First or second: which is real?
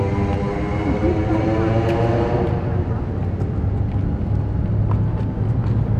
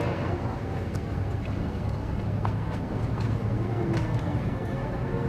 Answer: first